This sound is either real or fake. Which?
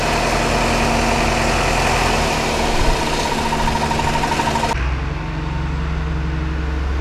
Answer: real